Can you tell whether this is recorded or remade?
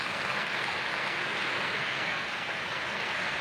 remade